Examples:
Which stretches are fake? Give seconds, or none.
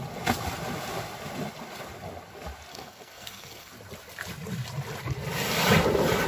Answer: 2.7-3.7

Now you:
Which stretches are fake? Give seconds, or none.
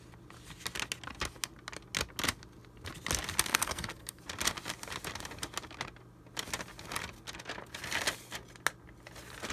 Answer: 3.5-4.2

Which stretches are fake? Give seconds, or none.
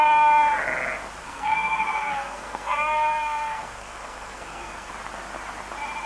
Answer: 1.2-4.9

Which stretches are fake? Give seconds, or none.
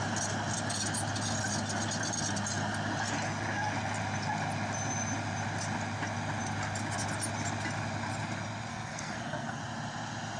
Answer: 8.7-9.6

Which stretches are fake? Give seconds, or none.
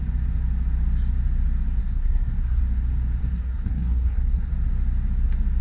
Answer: 1.8-2.6; 3.2-4.5